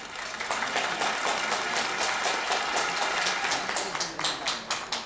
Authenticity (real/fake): real